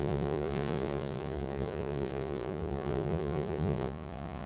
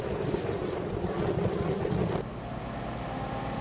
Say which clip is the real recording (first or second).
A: second